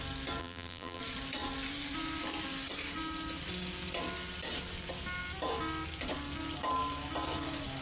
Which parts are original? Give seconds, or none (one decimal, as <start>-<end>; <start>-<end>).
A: 0.0-0.4; 1.0-7.8